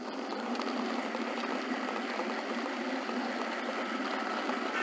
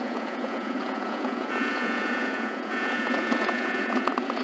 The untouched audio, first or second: first